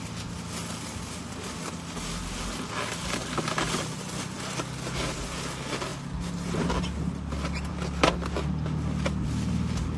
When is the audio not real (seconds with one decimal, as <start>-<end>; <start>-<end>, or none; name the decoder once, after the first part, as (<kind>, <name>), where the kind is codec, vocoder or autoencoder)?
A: none